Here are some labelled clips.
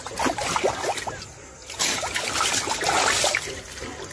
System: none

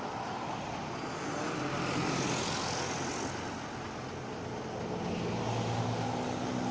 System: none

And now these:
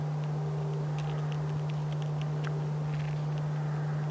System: none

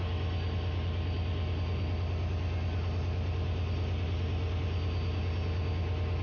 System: none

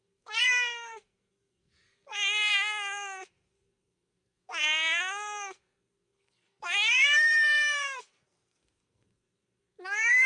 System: codec, SNAC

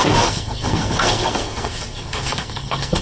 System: codec, SNAC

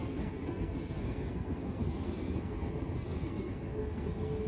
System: codec, SNAC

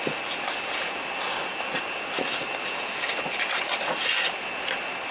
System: none